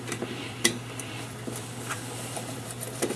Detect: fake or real fake